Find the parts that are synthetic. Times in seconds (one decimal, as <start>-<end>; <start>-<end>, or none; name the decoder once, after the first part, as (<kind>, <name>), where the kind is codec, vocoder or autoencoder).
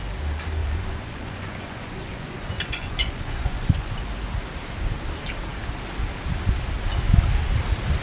0.6-4.0 (vocoder, Vocos)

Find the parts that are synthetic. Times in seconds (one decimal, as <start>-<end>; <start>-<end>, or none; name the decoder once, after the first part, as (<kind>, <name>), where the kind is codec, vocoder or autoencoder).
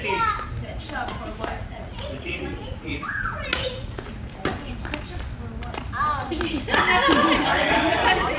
1.6-4.1 (vocoder, Vocos); 7.5-8.4